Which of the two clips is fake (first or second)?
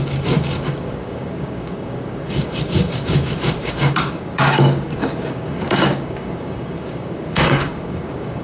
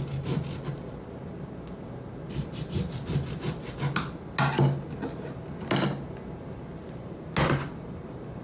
first